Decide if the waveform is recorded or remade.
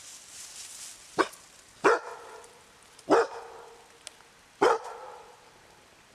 recorded